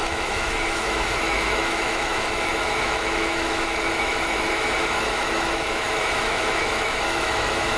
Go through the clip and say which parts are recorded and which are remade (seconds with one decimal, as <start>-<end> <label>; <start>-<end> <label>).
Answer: 0.0-7.8 remade